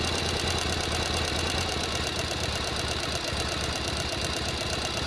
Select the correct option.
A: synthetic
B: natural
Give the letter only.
A